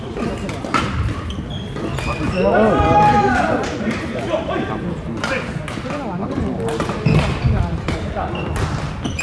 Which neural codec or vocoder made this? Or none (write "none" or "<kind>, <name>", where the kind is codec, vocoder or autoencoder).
none